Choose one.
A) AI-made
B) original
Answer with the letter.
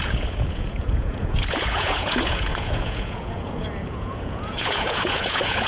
A